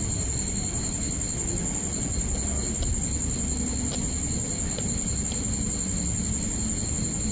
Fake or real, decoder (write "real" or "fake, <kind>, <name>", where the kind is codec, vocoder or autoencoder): real